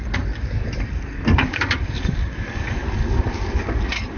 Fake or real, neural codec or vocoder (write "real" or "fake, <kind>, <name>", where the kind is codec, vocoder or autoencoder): fake, codec, DAC